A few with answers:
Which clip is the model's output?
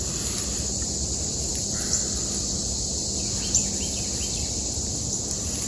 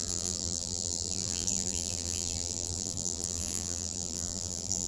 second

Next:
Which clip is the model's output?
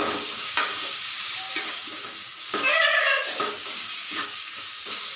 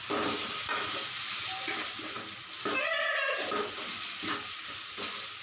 first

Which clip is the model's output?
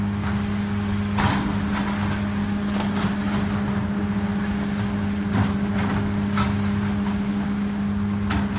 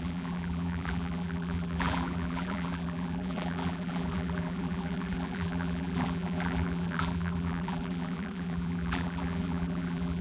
second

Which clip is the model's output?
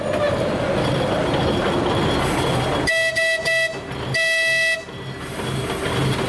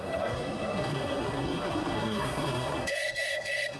second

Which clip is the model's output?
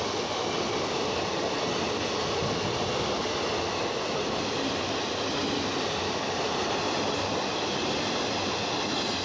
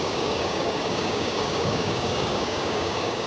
second